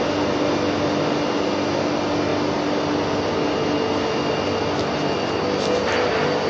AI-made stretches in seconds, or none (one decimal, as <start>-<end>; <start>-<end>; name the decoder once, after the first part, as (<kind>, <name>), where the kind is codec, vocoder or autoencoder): none